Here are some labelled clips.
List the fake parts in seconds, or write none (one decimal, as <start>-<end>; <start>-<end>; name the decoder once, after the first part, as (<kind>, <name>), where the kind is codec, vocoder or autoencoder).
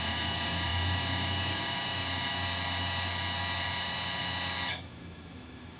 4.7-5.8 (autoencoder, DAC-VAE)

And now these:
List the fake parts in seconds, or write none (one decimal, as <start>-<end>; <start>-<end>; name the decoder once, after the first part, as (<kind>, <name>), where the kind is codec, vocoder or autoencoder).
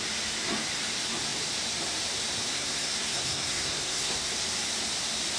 2.5-4.3 (codec, SNAC)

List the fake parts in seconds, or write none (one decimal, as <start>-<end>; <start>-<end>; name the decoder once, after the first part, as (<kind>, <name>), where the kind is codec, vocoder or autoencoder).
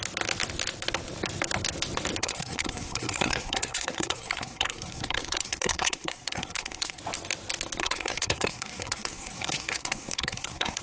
2.2-7.0 (codec, SNAC); 7.8-10.8